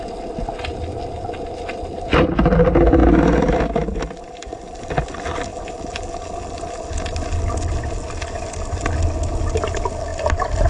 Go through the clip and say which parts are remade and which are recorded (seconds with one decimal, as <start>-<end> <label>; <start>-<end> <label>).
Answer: 0.0-10.1 recorded; 10.1-10.7 remade